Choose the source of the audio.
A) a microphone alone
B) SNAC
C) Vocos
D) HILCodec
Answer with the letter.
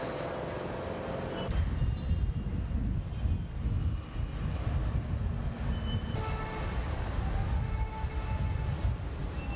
A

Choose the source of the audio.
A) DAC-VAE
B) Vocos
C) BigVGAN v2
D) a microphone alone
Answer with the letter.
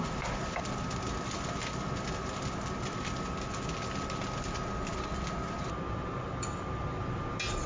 D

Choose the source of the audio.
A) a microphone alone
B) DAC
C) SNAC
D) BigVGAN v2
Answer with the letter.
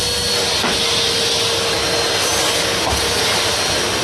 A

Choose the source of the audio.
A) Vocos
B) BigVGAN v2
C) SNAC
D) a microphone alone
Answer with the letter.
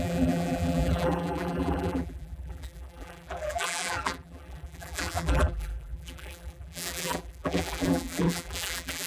B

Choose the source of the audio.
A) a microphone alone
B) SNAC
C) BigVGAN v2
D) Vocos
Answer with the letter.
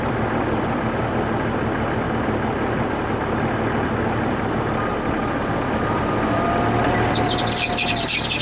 A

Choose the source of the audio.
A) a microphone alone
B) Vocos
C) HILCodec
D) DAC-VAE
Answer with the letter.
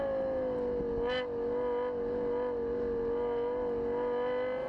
A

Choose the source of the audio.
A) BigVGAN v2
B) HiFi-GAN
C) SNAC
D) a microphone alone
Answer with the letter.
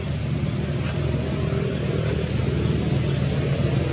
D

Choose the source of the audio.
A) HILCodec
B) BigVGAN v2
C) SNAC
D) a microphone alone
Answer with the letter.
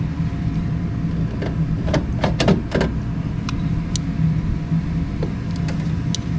D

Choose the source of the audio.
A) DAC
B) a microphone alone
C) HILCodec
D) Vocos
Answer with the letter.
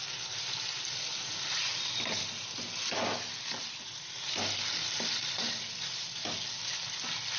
B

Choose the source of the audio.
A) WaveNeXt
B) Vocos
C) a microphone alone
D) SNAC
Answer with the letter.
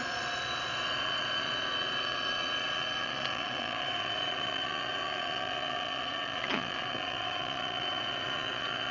B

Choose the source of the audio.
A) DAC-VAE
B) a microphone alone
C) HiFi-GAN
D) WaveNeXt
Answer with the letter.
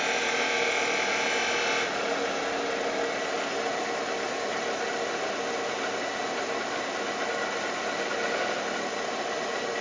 B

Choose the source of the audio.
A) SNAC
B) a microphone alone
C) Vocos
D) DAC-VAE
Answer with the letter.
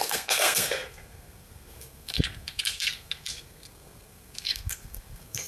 A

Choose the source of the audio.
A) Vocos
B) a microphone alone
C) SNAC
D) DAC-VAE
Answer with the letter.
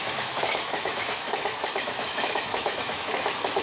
D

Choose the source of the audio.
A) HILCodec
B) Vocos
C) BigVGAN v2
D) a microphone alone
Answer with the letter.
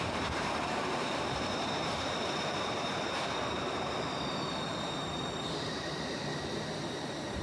C